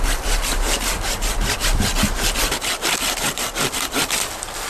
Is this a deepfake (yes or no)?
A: no